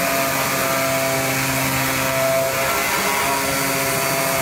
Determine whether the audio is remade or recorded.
recorded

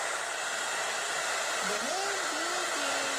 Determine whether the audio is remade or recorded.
recorded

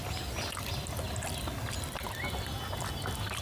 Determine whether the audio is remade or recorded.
recorded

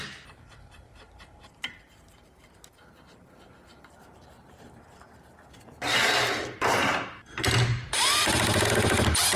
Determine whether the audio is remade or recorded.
remade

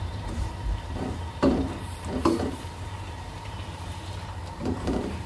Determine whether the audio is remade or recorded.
remade